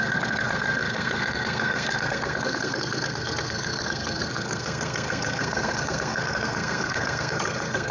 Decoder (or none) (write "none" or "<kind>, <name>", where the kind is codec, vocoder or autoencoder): codec, SNAC